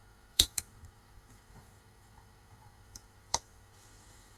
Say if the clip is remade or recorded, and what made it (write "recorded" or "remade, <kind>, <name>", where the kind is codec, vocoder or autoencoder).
remade, autoencoder, DAC-VAE